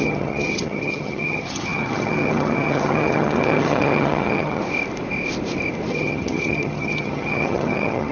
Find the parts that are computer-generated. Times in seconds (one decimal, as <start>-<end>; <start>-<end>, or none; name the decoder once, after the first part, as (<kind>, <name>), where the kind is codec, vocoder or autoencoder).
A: 0.0-4.6 (vocoder, HiFi-GAN); 5.9-8.1